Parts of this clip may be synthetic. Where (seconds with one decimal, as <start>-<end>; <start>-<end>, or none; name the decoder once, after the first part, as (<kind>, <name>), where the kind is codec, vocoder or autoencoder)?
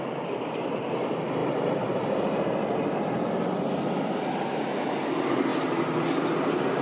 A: none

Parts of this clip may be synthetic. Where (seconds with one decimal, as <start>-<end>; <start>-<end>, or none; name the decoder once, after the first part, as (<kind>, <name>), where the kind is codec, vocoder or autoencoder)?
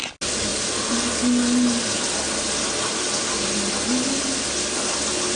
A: none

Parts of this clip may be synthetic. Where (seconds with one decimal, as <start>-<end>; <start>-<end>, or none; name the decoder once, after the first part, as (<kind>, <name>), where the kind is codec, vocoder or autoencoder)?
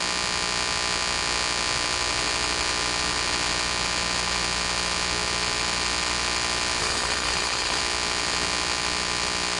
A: 6.8-7.8 (codec, HILCodec)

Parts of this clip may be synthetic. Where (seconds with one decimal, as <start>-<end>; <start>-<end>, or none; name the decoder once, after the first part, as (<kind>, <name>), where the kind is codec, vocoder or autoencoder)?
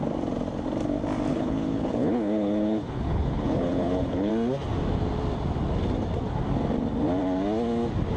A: 1.3-4.3 (codec, HILCodec)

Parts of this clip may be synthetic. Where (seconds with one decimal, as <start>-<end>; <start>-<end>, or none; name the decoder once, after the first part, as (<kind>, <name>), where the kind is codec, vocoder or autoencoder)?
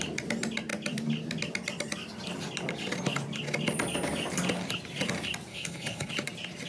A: 5.5-6.1 (codec, HILCodec)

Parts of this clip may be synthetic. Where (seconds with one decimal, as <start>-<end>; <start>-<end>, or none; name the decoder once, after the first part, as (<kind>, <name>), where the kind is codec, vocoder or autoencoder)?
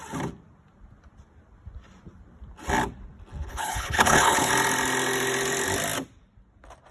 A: 3.5-4.5 (codec, HILCodec)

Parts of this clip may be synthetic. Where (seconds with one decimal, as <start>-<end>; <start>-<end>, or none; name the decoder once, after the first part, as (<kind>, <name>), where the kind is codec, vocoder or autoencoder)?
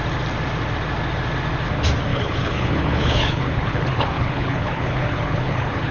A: 2.1-5.9 (codec, HILCodec)